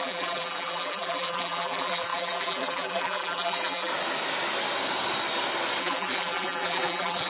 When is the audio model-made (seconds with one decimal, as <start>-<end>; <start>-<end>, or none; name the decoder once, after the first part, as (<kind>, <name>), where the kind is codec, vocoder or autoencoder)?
0.0-3.9 (vocoder, BigVGAN v2); 5.8-7.3